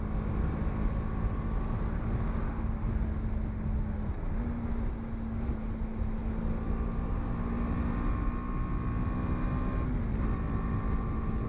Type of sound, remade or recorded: recorded